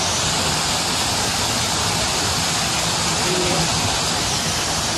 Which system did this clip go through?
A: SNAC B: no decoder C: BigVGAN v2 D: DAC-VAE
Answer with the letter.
B